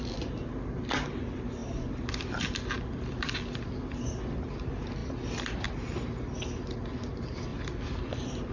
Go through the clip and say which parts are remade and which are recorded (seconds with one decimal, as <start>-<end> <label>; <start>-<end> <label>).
0.0-1.6 recorded; 1.6-3.3 remade; 3.3-7.5 recorded; 7.5-8.1 remade; 8.1-8.5 recorded

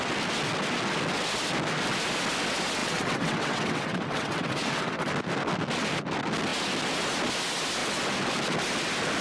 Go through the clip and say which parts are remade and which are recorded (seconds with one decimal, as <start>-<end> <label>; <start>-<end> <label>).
0.0-2.8 recorded; 2.8-5.1 remade; 5.1-9.2 recorded

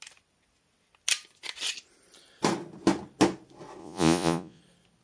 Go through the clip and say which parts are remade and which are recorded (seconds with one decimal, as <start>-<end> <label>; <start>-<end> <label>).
0.0-3.8 recorded; 3.8-4.6 remade; 4.6-5.0 recorded

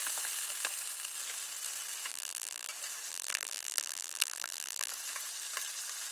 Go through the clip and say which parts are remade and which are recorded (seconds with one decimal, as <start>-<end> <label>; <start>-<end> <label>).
0.0-2.1 recorded; 2.1-2.7 remade; 2.7-3.1 recorded; 3.1-4.9 remade; 4.9-6.1 recorded

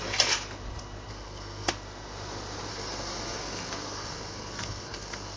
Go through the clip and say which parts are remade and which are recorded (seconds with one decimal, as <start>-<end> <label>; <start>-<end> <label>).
0.0-1.1 recorded; 1.1-1.7 remade; 1.7-2.7 recorded; 2.7-5.4 remade

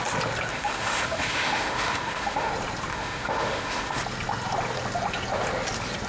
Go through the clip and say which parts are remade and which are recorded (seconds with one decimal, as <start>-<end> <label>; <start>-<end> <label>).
0.0-0.5 recorded; 0.5-2.5 remade; 2.5-2.9 recorded; 2.9-4.0 remade; 4.0-6.1 recorded

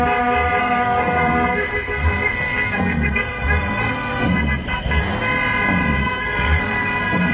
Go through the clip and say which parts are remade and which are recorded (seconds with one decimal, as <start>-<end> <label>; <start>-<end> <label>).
0.0-0.6 recorded; 0.6-5.0 remade; 5.0-6.0 recorded; 6.0-7.3 remade